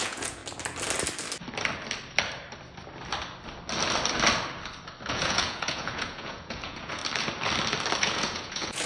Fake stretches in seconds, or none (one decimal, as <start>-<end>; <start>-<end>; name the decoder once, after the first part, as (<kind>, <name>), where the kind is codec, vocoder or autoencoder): 0.0-0.4 (vocoder, Vocos); 5.1-7.0; 8.0-8.9